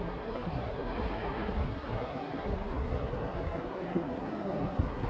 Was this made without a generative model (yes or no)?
no